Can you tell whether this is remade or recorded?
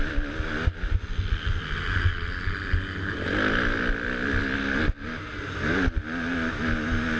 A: recorded